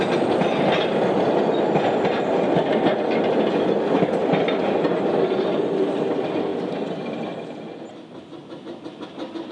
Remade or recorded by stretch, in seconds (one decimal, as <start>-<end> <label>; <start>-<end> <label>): 0.0-9.5 recorded